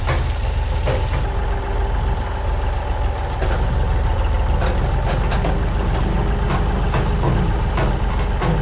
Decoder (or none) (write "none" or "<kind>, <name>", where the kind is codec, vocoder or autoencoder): none